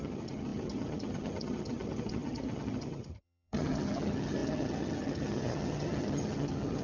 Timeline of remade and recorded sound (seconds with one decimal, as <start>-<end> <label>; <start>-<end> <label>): 0.0-6.8 remade